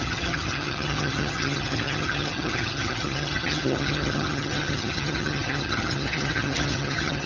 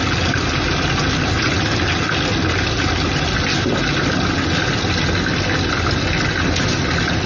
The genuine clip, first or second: second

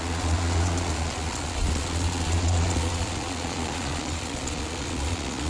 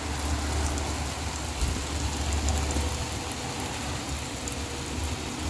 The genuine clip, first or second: second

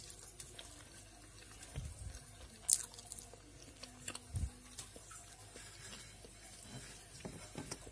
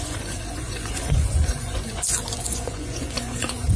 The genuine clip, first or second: first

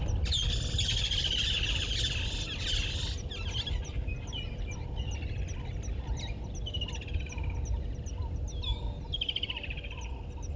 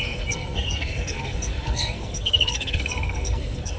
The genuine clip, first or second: first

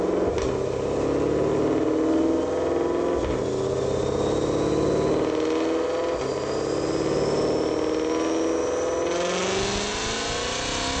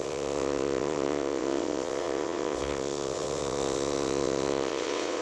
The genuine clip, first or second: first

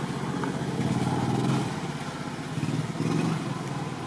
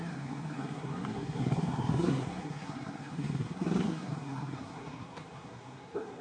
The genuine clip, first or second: first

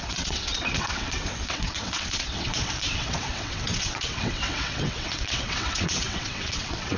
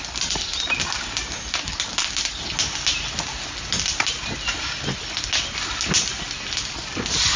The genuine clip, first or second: second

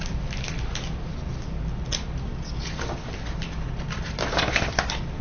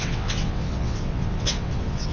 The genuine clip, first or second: first